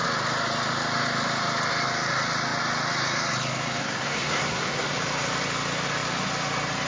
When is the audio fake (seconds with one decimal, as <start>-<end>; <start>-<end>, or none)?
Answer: 3.8-4.9